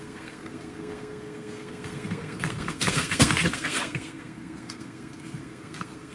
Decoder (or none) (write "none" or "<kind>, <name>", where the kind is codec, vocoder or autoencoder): codec, SNAC